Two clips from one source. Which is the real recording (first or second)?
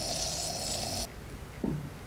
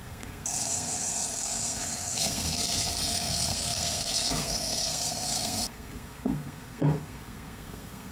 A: first